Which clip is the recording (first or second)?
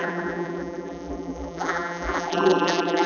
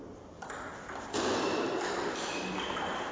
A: second